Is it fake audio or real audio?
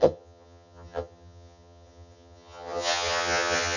fake